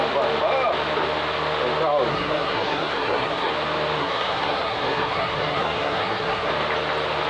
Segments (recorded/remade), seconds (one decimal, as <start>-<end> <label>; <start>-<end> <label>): 0.0-2.1 recorded; 2.1-3.5 remade; 3.5-4.0 recorded; 4.0-6.5 remade; 6.5-7.3 recorded